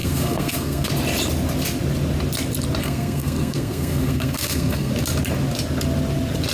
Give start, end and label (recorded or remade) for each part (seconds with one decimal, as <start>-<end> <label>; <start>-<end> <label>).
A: 0.0-0.9 remade; 0.9-2.8 recorded; 2.8-4.9 remade; 4.9-6.5 recorded